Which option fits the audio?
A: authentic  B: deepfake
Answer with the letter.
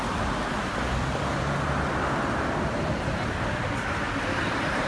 B